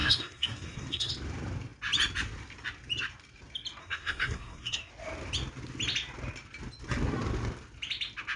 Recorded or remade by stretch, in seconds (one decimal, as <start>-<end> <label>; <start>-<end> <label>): 0.0-1.1 remade; 1.1-3.8 recorded; 3.8-4.9 remade; 4.9-8.4 recorded